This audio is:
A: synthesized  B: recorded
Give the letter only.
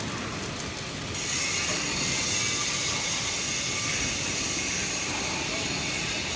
B